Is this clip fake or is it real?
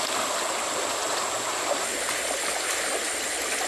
real